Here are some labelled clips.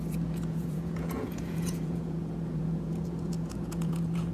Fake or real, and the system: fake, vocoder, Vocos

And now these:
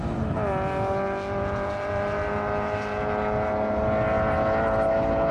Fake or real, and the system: real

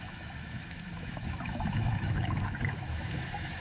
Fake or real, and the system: fake, autoencoder, DAC-VAE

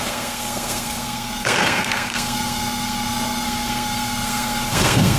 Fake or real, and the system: fake, codec, SNAC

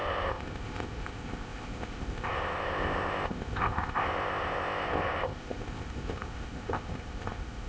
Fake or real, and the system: fake, codec, ZipCodec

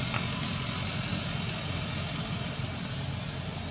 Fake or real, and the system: real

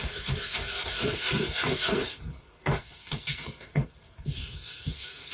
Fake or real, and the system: fake, codec, SNAC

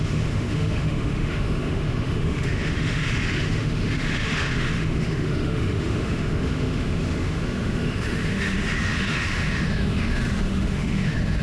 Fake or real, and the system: fake, autoencoder, DAC-VAE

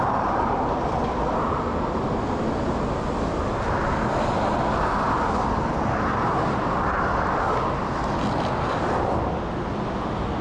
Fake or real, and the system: real